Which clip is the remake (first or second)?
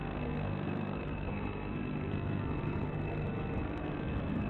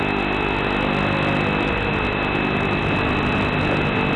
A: first